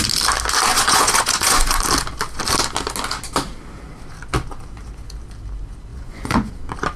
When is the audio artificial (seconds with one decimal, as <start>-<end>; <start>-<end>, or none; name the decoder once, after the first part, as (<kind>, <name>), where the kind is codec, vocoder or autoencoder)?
0.7-1.8 (vocoder, Vocos); 5.9-6.5